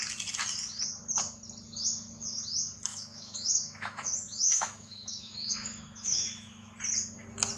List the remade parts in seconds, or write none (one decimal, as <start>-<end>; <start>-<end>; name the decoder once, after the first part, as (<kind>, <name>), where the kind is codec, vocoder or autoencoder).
2.9-6.7 (autoencoder, DAC-VAE)